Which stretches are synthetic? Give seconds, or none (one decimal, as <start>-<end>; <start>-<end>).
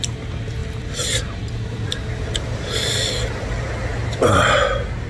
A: 0.0-5.1